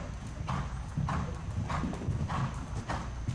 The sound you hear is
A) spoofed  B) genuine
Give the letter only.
B